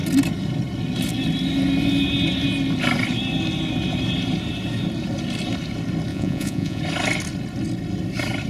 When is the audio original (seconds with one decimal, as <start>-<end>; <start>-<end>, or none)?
0.0-6.1; 6.8-8.5